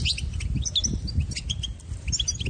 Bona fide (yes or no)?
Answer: yes